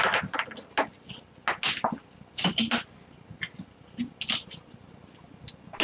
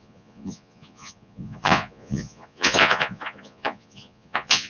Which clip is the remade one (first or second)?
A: second